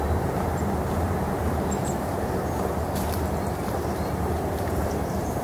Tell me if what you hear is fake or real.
fake